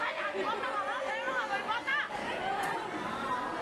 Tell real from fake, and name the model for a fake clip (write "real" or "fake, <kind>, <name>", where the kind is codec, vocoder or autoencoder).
real